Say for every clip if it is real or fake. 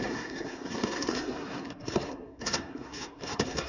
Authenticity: fake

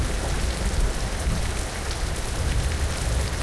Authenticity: real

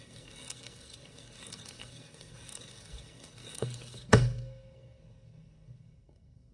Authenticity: fake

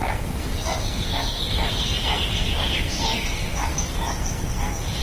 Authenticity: fake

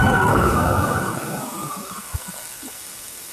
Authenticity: fake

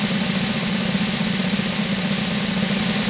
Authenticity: real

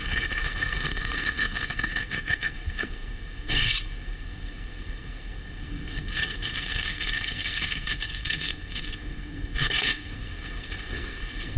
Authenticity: fake